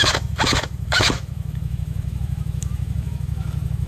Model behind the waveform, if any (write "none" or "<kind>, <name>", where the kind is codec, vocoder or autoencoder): autoencoder, DAC-VAE